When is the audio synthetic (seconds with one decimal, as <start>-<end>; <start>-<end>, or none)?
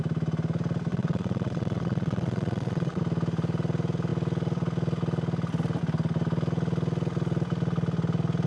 0.9-3.0